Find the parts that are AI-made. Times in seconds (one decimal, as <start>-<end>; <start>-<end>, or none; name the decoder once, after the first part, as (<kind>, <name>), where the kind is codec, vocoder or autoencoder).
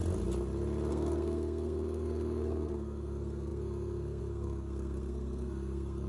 0.9-6.1 (codec, SNAC)